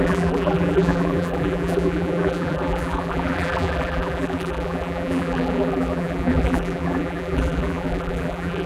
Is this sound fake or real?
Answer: fake